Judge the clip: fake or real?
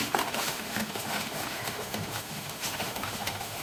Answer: fake